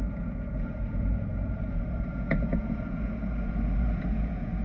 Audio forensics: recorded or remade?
remade